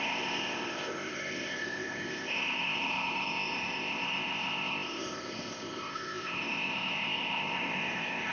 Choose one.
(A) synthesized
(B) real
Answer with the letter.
A